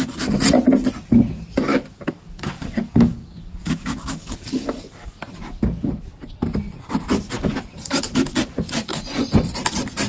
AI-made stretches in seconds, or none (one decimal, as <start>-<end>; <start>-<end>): 1.7-5.2